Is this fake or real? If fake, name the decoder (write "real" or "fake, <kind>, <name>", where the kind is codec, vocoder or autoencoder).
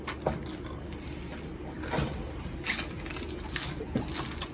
real